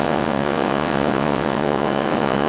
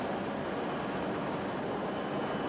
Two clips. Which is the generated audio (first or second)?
first